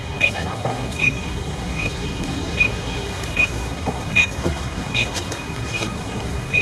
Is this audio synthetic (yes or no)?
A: yes